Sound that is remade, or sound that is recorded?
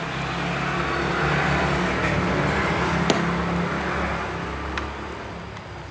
recorded